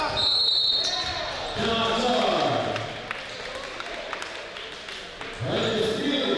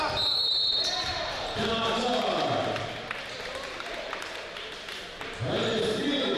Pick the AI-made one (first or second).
second